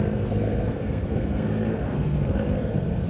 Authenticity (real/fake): fake